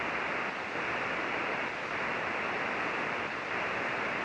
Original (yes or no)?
yes